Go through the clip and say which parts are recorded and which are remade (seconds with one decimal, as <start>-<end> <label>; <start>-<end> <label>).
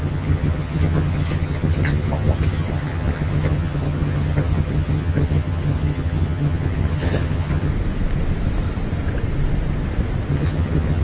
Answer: 0.0-7.7 remade; 7.7-10.3 recorded; 10.3-11.0 remade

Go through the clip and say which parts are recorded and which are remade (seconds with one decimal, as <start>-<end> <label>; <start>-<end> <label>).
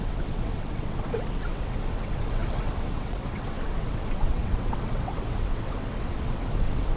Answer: 0.0-7.0 remade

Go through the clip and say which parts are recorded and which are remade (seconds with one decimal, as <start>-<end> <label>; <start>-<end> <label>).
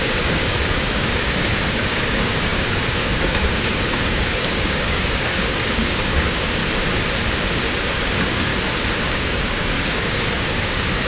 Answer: 0.0-6.6 remade; 6.6-8.0 recorded; 8.0-8.5 remade; 8.5-9.0 recorded; 9.0-11.1 remade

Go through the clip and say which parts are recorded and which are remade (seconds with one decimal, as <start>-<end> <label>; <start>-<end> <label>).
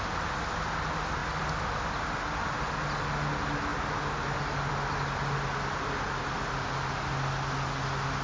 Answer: 0.0-8.2 recorded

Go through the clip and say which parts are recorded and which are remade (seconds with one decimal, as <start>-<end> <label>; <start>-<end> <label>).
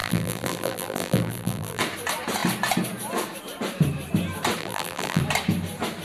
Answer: 0.0-1.8 remade; 1.8-4.6 recorded; 4.6-5.2 remade; 5.2-6.0 recorded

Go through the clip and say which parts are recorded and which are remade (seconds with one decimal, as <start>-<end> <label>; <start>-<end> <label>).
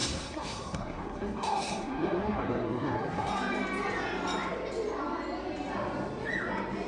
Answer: 0.0-3.3 remade; 3.3-6.9 recorded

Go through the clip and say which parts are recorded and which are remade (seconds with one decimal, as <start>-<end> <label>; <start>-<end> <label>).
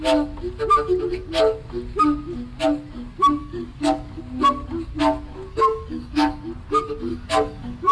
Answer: 0.0-3.4 recorded; 3.4-4.2 remade; 4.2-5.5 recorded; 5.5-6.3 remade; 6.3-7.1 recorded; 7.1-7.9 remade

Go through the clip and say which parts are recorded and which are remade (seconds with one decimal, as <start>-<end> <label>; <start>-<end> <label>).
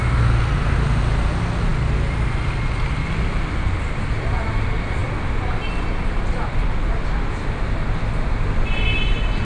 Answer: 0.0-9.4 recorded